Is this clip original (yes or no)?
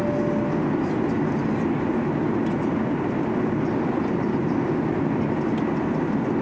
yes